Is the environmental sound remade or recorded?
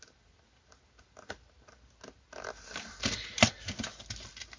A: recorded